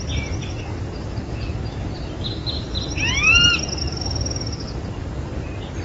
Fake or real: real